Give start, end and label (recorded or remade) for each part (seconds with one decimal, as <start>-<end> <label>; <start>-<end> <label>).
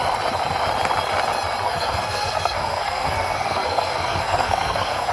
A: 0.0-1.6 recorded; 1.6-5.1 remade